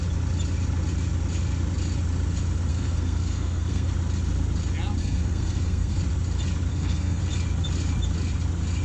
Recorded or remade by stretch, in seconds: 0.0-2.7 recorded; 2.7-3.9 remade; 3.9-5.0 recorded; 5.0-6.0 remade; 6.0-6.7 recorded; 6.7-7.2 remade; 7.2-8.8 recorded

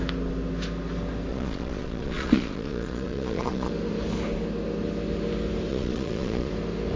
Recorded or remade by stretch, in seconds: 0.0-1.3 recorded; 1.3-3.7 remade; 3.7-5.7 recorded; 5.7-6.5 remade; 6.5-7.0 recorded